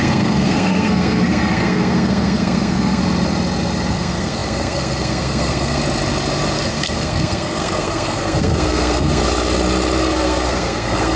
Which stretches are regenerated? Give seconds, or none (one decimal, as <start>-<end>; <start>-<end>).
0.0-3.0; 3.9-5.8; 6.7-9.2; 10.0-11.2